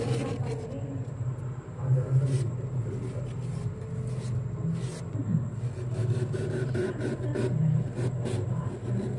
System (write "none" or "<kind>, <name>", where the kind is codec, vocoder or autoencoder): none